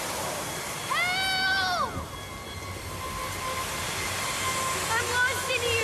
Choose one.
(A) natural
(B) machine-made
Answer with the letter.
A